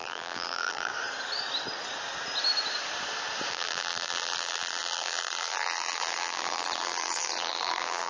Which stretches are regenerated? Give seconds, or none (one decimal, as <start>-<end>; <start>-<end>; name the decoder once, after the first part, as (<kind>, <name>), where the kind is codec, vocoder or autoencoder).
0.0-0.9 (vocoder, BigVGAN v2); 3.5-8.1